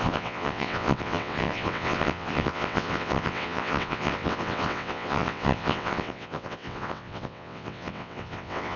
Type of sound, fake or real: fake